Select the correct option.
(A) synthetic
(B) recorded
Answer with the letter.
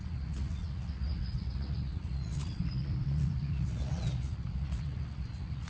A